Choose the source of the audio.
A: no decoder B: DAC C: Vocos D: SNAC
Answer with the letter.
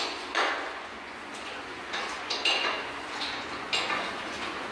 C